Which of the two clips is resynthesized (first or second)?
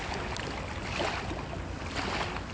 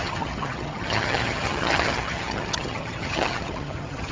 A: second